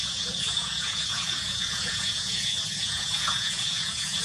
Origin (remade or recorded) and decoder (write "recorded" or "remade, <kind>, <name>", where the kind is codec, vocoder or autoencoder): remade, vocoder, Vocos